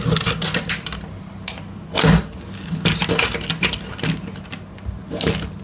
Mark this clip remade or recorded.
recorded